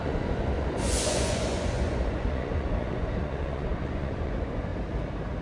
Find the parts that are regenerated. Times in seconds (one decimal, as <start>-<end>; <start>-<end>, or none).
0.0-4.7